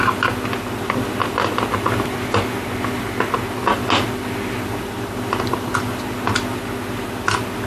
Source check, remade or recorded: recorded